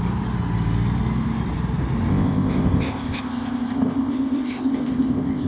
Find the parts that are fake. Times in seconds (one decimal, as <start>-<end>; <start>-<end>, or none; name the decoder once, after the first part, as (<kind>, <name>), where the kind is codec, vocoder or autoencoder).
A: 2.1-5.5 (codec, ZipCodec)